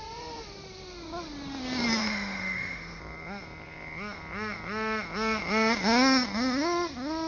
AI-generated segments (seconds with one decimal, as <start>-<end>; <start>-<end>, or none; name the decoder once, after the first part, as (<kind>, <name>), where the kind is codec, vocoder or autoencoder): 2.0-3.0 (autoencoder, DAC-VAE)